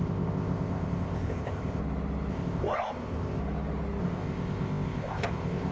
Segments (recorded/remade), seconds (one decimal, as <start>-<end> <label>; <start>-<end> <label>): 0.0-1.8 remade; 1.8-2.3 recorded; 2.3-3.4 remade; 3.4-4.0 recorded; 4.0-5.7 remade